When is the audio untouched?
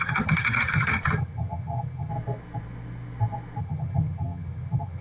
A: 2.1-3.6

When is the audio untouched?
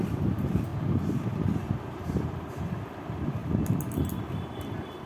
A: 0.7-2.6; 3.4-4.2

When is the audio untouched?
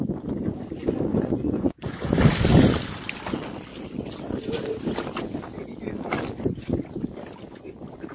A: 0.0-1.1; 2.2-8.1